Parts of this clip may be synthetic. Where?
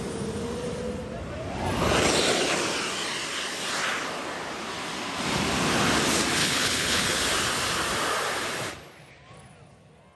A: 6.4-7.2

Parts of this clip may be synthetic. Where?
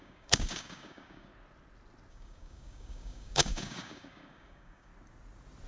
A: 0.0-1.3; 2.1-4.9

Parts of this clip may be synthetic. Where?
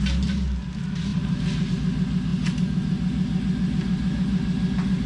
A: none